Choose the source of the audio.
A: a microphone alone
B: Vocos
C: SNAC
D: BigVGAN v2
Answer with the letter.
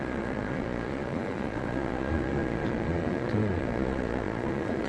B